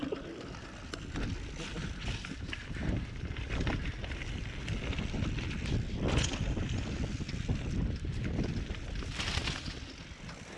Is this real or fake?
real